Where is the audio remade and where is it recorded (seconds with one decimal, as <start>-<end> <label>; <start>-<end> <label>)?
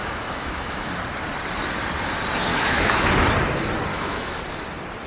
0.0-0.9 remade; 0.9-2.5 recorded; 2.5-3.1 remade; 3.1-3.9 recorded; 3.9-4.4 remade; 4.4-5.1 recorded